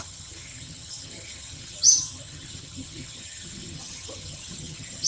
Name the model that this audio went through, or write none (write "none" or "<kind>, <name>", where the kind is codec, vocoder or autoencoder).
vocoder, HiFi-GAN